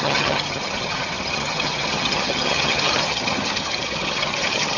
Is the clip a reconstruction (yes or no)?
yes